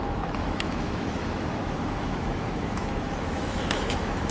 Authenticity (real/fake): fake